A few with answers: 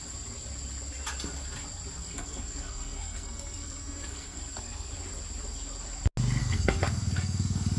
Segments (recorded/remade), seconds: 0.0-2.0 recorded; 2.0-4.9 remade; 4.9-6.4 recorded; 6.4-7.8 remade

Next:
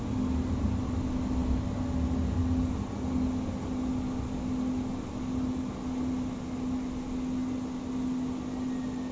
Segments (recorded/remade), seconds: 0.0-9.1 recorded

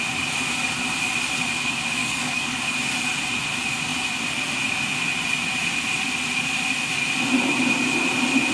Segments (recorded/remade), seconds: 0.0-2.0 recorded; 2.0-2.6 remade; 2.6-8.5 recorded

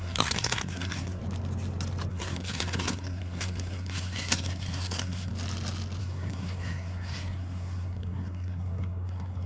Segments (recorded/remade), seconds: 0.0-1.2 remade; 1.2-2.1 recorded; 2.1-5.3 remade; 5.3-6.0 recorded; 6.0-9.5 remade

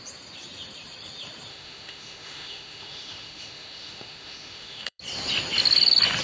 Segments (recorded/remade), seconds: 0.0-1.5 recorded; 1.5-5.0 remade; 5.0-6.2 recorded